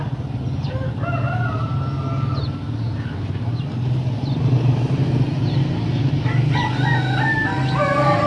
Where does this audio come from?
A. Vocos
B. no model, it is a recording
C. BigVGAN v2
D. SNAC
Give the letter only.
B